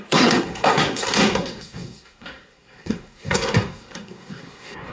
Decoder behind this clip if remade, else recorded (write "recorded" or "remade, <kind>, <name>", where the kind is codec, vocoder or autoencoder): remade, codec, SNAC